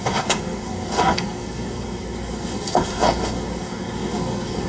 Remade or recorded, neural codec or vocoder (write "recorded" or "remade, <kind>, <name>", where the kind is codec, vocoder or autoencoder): remade, codec, SNAC